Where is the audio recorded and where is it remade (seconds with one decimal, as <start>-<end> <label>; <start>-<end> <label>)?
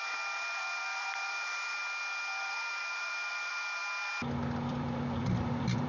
0.0-1.8 remade; 1.8-2.4 recorded; 2.4-3.8 remade; 3.8-4.6 recorded; 4.6-5.9 remade